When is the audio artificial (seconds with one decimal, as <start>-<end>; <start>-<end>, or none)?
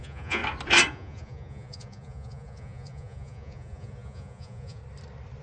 0.0-0.4; 0.9-4.8